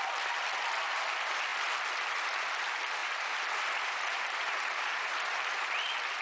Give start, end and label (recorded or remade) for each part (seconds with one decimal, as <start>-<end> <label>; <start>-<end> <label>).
0.0-3.0 recorded; 3.0-5.7 remade; 5.7-6.2 recorded